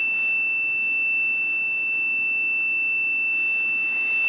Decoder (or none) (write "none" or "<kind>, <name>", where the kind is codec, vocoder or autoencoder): none